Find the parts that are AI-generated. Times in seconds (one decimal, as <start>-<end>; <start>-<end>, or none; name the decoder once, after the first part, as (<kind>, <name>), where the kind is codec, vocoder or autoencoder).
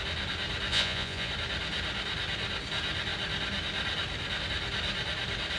0.7-1.3 (vocoder, Vocos)